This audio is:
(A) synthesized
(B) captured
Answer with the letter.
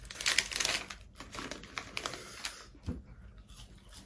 B